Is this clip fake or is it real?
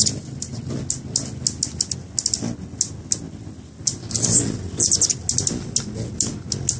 real